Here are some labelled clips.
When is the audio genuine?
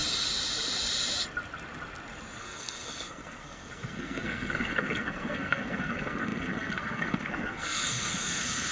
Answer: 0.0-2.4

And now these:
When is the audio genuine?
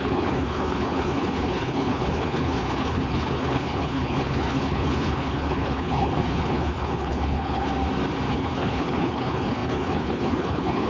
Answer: 7.7-8.3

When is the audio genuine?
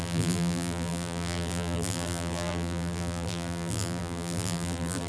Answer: none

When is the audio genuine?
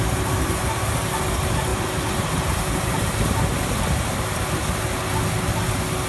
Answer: 0.0-6.1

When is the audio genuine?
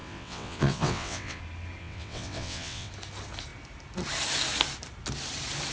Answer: 1.4-1.8; 2.9-5.7